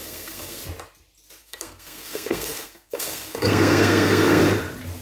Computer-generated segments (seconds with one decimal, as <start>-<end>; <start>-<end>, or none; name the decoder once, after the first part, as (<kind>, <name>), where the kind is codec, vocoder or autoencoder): 0.0-0.6 (codec, SNAC); 1.4-4.4